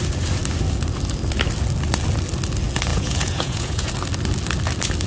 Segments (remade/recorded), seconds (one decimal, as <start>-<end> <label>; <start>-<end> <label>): 0.0-2.9 recorded; 2.9-3.9 remade; 3.9-5.1 recorded